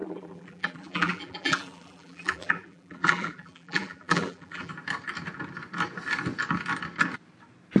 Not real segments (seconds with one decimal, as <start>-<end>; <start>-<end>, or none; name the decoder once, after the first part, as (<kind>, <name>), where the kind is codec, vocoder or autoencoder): 0.0-4.7 (vocoder, BigVGAN v2)